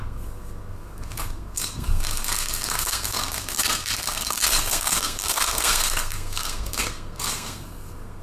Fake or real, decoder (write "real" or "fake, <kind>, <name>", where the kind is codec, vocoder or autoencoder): fake, codec, SNAC